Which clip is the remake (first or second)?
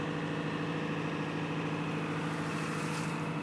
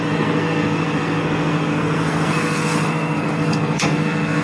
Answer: second